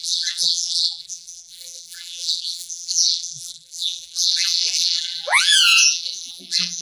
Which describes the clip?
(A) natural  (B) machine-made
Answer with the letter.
B